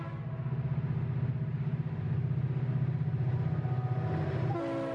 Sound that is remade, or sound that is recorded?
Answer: recorded